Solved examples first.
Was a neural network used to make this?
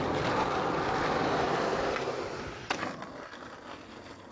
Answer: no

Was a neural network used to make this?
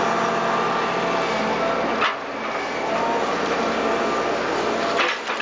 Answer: no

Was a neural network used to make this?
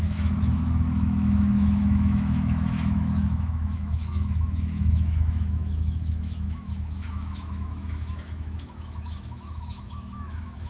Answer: yes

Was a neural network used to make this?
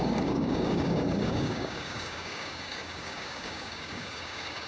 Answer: yes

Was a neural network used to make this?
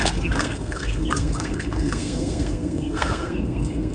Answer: yes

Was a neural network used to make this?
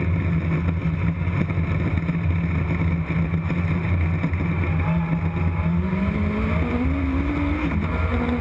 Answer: no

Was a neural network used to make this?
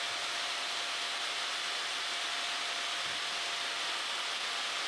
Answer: no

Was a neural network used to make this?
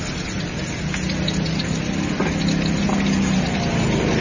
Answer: no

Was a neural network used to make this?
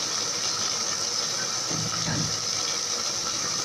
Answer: no